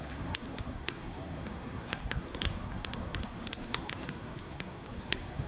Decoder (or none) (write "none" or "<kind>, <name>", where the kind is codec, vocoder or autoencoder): codec, SNAC